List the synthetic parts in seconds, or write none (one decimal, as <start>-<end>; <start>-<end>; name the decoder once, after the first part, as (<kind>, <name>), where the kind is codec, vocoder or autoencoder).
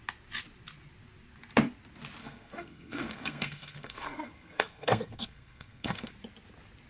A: 2.2-6.1 (codec, SNAC)